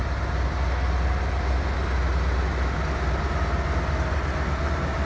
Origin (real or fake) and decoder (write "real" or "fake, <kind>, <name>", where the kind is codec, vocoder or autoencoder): real